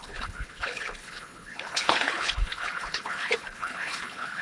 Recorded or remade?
remade